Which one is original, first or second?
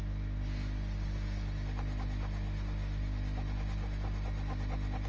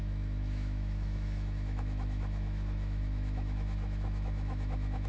first